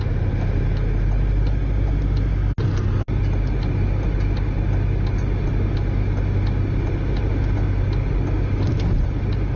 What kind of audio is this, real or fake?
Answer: real